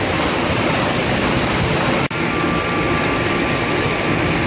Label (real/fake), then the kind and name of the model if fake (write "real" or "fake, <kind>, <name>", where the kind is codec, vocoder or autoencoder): real